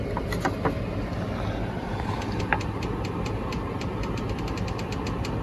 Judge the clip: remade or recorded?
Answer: recorded